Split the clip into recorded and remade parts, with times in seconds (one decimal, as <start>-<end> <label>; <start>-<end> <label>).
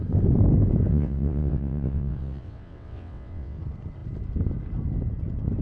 0.0-0.9 recorded; 0.9-3.6 remade; 3.6-5.6 recorded